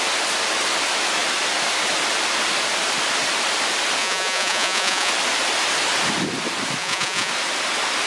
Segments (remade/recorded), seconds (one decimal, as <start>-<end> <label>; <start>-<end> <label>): 0.0-4.0 recorded; 4.0-5.1 remade; 5.1-6.8 recorded; 6.8-7.3 remade; 7.3-8.1 recorded